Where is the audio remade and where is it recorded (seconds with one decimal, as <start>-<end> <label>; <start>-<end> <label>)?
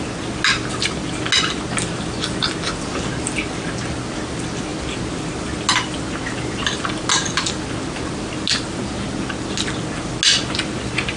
0.0-11.2 recorded